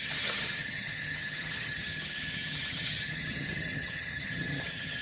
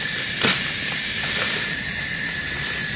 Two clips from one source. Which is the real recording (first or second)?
second